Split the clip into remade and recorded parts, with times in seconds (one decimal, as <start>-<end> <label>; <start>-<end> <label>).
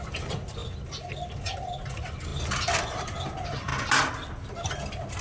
0.0-5.2 recorded